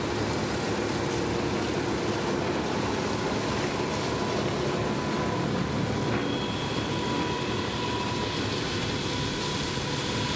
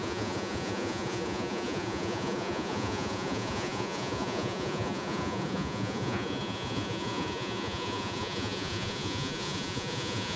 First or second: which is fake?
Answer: second